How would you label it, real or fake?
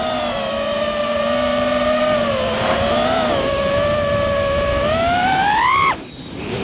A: fake